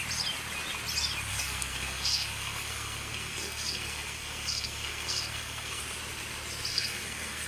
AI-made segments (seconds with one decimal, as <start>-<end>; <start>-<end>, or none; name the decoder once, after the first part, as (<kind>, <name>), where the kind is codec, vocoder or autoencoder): 1.3-5.8 (codec, SNAC); 6.7-7.5